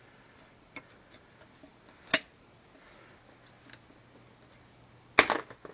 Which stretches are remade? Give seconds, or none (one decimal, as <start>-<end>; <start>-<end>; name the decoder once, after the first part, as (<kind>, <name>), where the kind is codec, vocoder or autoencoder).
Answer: none